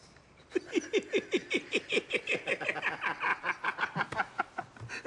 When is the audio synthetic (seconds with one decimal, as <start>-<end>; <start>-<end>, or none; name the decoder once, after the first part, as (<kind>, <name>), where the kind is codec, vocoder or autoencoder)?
0.0-0.6 (vocoder, BigVGAN v2); 1.4-2.2; 3.3-3.8